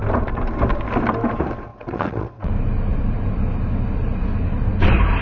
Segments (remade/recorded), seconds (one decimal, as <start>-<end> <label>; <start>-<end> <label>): 0.0-1.7 recorded; 1.7-2.5 remade; 2.5-5.2 recorded